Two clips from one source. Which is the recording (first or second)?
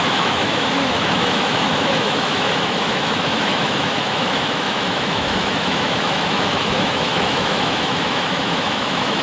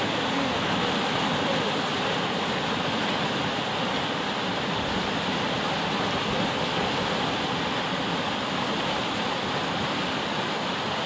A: second